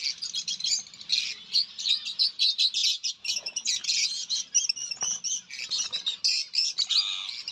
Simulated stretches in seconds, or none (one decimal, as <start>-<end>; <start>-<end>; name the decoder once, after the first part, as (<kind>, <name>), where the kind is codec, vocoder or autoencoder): 2.8-4.4 (vocoder, Vocos)